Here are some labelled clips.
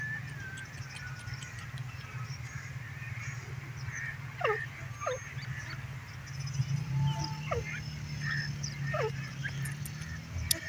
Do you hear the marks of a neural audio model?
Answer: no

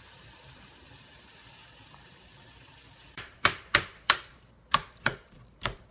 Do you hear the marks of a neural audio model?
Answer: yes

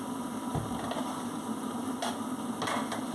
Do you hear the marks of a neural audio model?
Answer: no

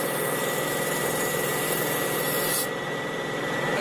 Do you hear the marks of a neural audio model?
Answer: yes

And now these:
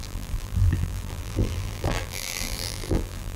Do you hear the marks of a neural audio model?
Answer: yes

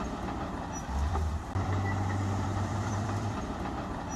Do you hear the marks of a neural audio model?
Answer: yes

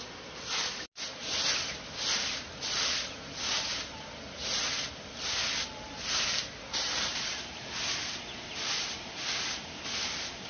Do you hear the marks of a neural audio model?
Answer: no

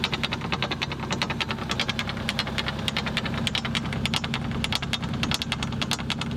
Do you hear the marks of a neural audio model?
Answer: no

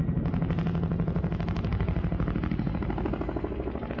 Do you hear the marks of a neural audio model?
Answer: no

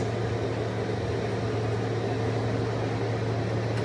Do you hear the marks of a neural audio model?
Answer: no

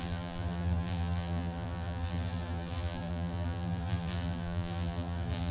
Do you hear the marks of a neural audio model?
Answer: yes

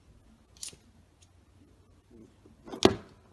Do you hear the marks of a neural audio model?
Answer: no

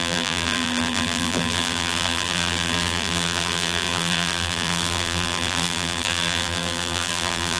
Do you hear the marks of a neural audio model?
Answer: yes